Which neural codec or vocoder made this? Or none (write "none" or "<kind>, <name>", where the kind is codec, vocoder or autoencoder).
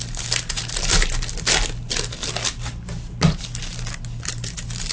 none